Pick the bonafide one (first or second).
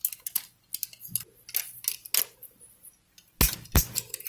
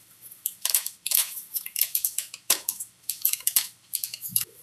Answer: first